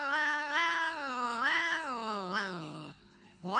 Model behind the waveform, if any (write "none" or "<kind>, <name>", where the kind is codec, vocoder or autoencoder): codec, HILCodec